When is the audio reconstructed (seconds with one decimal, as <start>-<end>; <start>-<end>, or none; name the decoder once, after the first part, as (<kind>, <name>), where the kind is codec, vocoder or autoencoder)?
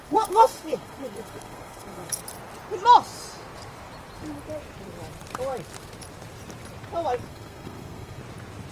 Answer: 0.0-2.2 (codec, SNAC); 7.3-8.2